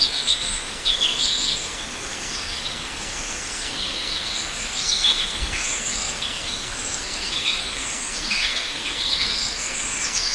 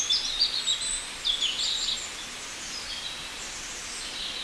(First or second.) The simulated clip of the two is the first